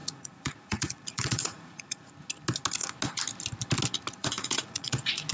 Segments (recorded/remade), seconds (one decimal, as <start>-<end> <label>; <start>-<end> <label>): 0.0-2.1 remade; 2.1-4.2 recorded; 4.2-5.3 remade